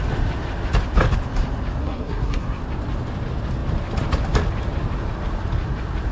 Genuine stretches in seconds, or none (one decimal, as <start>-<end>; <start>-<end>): 0.0-1.8; 2.6-6.1